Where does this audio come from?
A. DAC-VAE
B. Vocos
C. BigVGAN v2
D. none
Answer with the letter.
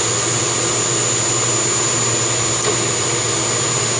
D